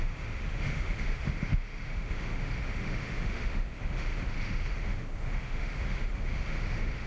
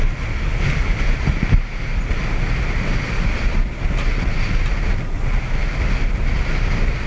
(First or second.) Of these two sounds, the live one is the second